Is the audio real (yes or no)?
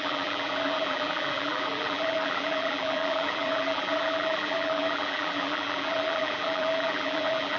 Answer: no